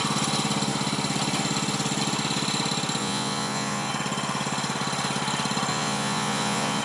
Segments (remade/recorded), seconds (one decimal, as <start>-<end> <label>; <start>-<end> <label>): 0.0-3.0 recorded; 3.0-3.9 remade; 3.9-5.7 recorded; 5.7-6.8 remade